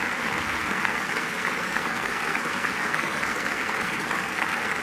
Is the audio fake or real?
fake